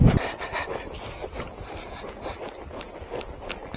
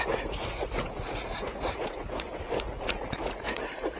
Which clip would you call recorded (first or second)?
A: first